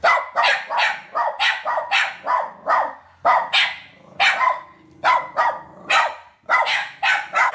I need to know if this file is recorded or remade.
recorded